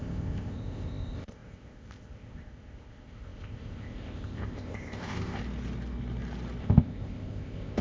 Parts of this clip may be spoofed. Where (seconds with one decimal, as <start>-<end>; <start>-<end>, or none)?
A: 0.0-5.4; 6.6-7.8